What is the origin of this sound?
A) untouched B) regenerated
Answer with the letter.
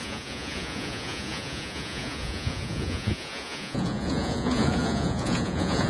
B